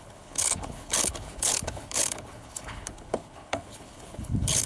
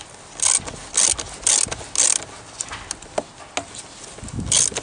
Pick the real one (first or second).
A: second